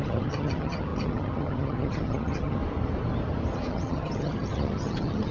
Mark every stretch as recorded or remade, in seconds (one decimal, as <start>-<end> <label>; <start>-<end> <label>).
0.0-2.6 remade; 2.6-3.7 recorded; 3.7-5.3 remade